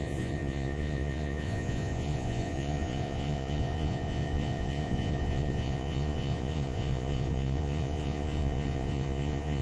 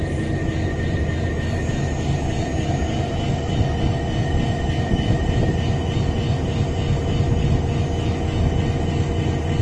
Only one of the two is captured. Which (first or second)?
second